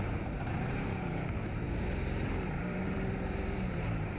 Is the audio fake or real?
fake